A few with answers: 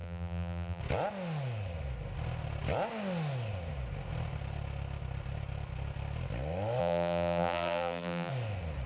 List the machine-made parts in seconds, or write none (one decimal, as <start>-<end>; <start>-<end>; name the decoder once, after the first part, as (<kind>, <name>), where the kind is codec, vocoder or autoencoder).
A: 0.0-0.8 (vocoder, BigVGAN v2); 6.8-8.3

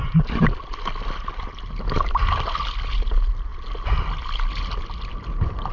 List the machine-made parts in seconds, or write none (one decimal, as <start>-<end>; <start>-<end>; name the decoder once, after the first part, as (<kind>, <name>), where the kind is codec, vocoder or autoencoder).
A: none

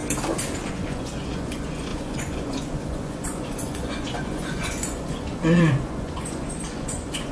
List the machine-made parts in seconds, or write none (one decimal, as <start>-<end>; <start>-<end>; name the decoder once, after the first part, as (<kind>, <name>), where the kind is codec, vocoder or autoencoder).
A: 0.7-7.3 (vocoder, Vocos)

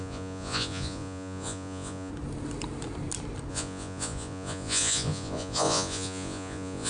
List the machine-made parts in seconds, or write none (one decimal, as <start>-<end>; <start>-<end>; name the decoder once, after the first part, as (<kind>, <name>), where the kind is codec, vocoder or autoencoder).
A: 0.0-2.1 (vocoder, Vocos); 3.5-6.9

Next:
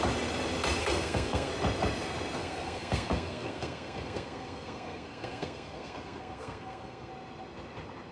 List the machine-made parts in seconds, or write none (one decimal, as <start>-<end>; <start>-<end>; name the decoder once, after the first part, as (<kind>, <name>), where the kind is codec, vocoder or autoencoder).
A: 0.8-1.5 (codec, SNAC); 2.4-7.1

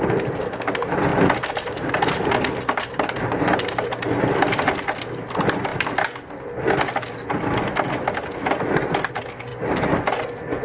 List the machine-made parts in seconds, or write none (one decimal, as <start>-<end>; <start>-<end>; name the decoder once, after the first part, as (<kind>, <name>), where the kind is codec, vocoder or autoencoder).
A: 1.1-4.7 (vocoder, BigVGAN v2)